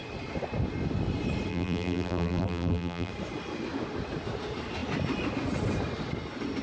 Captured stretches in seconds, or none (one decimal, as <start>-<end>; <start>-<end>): 0.0-1.5; 3.1-6.6